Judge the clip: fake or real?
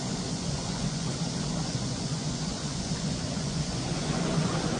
fake